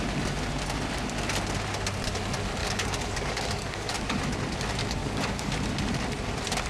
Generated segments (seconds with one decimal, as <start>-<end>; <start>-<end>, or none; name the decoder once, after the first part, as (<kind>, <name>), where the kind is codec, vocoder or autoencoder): 2.6-4.2 (codec, DAC); 5.0-5.5